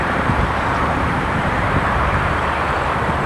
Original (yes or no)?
no